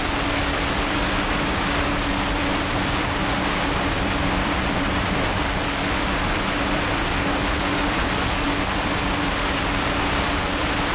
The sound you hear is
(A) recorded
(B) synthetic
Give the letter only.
A